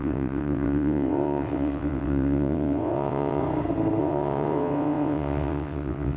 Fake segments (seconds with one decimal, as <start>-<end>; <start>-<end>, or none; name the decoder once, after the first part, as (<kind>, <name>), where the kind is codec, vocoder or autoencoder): 0.0-3.4 (vocoder, WaveNeXt); 4.0-6.2